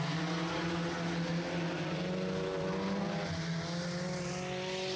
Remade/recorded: recorded